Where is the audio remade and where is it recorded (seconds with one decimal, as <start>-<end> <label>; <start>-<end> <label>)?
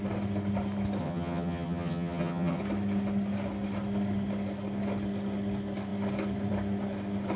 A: 0.0-1.0 recorded; 1.0-2.6 remade; 2.6-7.4 recorded